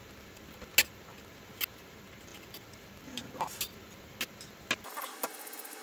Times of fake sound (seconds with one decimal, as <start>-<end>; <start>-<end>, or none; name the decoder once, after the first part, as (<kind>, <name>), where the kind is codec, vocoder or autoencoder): none